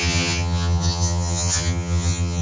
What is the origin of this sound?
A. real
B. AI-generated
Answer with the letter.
B